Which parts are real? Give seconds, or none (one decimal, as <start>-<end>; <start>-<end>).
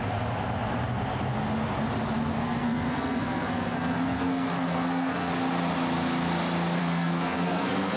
0.0-2.3; 5.3-6.8